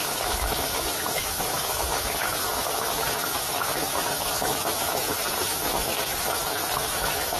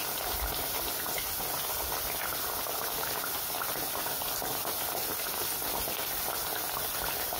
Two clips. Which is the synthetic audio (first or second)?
first